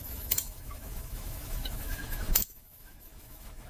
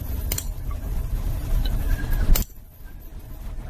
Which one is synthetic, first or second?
first